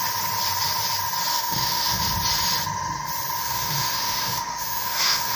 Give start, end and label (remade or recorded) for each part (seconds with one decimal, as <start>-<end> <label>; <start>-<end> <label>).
0.0-1.3 recorded; 1.3-2.0 remade; 2.0-3.4 recorded; 3.4-5.4 remade